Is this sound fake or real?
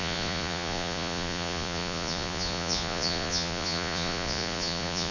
fake